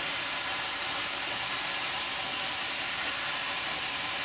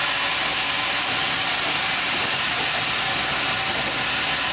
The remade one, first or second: first